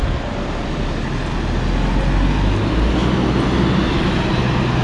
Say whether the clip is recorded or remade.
recorded